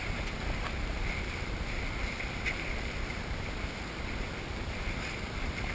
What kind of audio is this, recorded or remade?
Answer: recorded